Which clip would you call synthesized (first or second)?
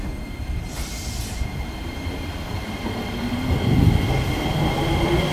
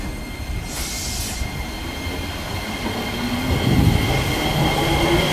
first